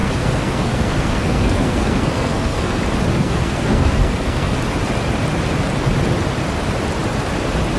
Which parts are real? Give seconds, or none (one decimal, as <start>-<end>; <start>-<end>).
2.8-3.2; 4.6-7.8